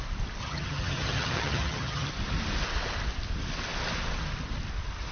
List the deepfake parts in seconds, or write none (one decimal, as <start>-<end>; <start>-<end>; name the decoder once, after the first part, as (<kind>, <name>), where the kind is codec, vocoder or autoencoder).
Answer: 0.4-2.1 (vocoder, HiFi-GAN)